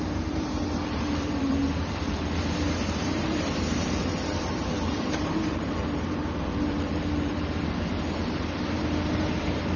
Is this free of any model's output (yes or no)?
no